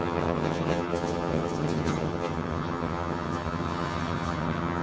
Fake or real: fake